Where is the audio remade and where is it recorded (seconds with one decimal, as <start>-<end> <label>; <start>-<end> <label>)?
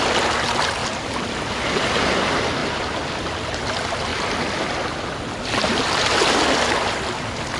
0.0-7.6 recorded